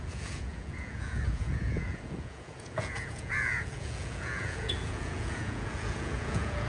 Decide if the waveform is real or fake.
fake